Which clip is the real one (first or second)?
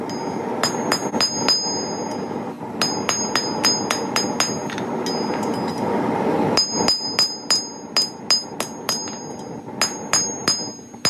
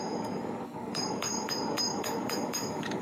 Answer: first